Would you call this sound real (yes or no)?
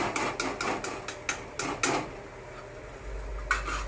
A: yes